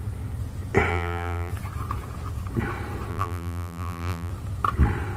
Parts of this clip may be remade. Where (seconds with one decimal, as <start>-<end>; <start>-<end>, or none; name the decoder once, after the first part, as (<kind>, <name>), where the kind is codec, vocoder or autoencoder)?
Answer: 0.9-1.5 (vocoder, BigVGAN v2); 3.1-4.3